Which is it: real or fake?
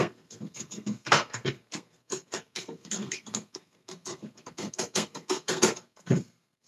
fake